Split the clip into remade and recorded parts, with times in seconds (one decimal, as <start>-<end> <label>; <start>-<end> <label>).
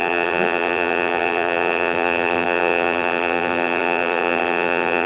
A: 0.0-5.1 remade